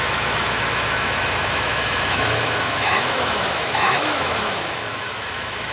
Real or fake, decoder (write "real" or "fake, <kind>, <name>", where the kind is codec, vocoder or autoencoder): fake, autoencoder, DAC-VAE